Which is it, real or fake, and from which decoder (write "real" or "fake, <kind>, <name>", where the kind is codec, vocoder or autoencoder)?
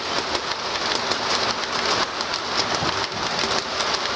real